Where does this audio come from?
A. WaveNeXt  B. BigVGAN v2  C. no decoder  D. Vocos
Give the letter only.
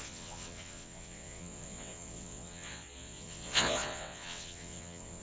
A